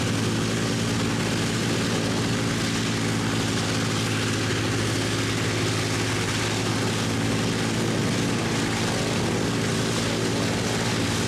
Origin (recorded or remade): recorded